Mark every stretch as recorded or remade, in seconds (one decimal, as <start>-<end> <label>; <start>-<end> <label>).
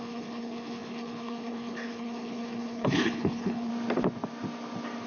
0.0-3.7 remade; 3.7-5.1 recorded